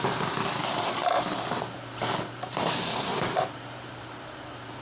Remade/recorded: remade